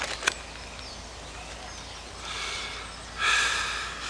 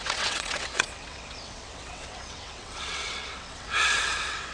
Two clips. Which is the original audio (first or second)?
first